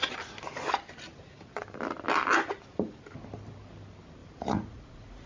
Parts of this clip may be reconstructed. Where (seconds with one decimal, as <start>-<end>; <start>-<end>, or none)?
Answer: 4.2-5.3